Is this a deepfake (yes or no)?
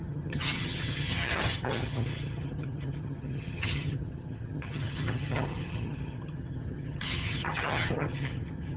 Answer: yes